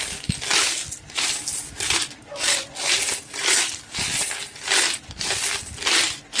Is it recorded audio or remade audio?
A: recorded